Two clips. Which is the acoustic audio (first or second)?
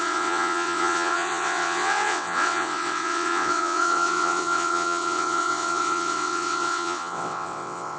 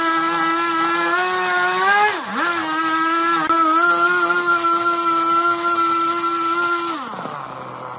second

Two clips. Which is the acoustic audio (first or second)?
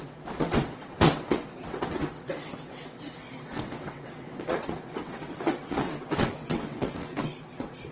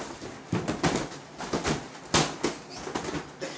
second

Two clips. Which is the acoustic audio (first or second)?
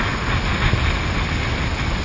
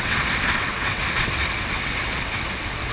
first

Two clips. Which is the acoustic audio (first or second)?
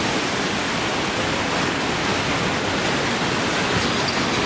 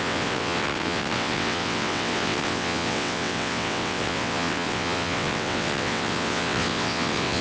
first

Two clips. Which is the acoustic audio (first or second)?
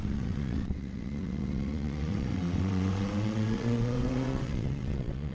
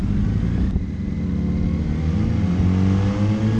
second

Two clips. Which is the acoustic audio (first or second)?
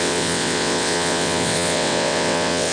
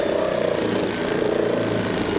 second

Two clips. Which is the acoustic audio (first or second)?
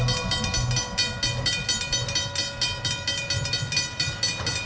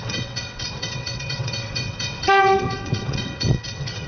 first